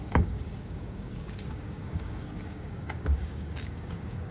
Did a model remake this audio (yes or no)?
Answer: yes